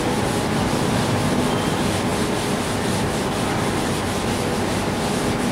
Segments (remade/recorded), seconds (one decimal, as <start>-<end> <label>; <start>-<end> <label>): 0.0-5.5 recorded